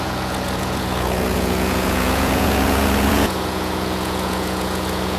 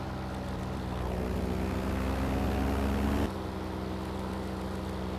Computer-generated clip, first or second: first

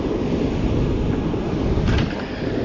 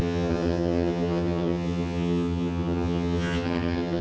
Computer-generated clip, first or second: second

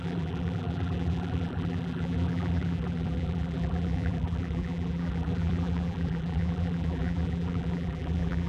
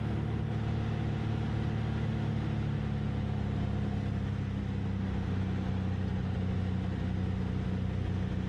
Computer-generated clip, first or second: first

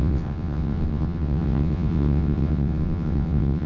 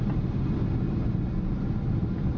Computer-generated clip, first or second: first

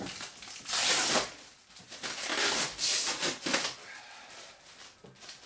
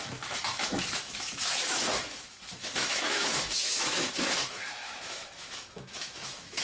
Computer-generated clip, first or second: second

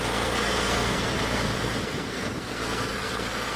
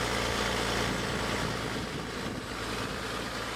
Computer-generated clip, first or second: first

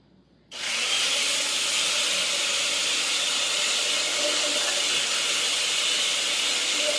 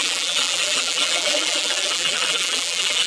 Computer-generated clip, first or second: second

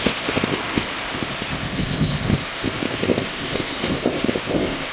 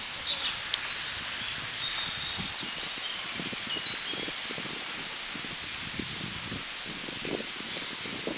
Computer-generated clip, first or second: first